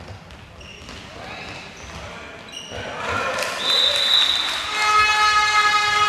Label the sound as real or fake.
real